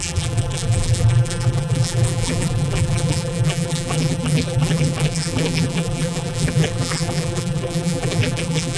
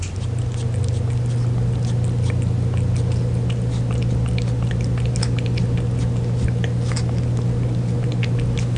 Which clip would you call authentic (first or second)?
second